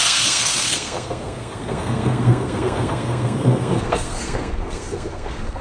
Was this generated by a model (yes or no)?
yes